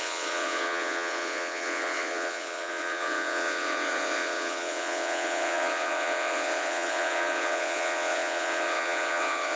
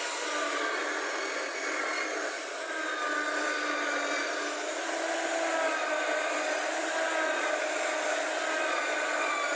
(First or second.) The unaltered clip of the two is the second